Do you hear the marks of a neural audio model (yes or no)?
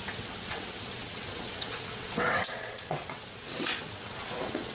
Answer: yes